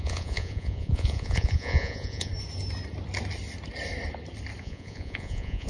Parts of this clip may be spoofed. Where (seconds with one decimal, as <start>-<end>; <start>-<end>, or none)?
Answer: 0.0-2.3; 4.6-5.7

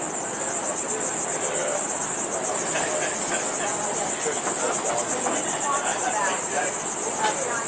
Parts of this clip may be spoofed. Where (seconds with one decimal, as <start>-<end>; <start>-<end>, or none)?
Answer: 1.6-2.5; 5.9-6.7

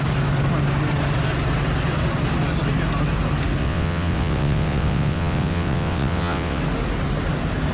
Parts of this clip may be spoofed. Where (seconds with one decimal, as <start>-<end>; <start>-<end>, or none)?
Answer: 3.6-6.6

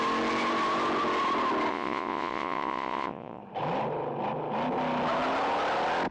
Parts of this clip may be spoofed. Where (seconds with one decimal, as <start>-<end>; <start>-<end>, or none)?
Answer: 1.7-3.4

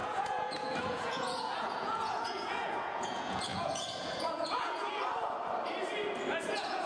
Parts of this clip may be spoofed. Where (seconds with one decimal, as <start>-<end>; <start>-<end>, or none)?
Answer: 0.0-5.0; 6.4-6.9

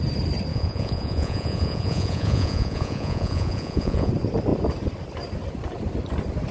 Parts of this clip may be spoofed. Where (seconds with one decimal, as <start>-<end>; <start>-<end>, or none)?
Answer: 0.5-4.1

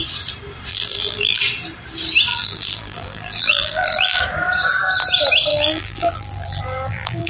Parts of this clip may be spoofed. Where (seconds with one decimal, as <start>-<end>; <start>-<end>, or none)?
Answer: 0.7-1.4; 2.3-4.2; 5.5-7.3

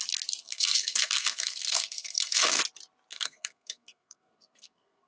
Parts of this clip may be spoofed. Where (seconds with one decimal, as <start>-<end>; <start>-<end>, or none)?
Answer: 0.4-2.6; 3.1-5.1